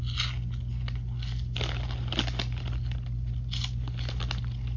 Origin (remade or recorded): recorded